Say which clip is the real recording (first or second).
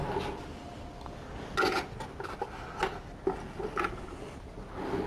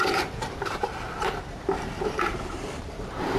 first